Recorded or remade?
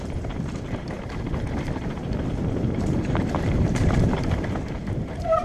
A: remade